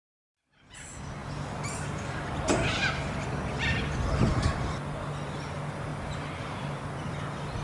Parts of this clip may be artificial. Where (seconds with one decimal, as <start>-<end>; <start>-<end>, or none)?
5.9-7.1